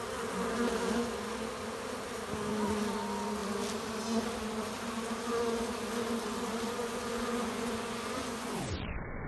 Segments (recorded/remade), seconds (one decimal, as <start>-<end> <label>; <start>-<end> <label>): 0.0-6.8 recorded; 6.8-9.3 remade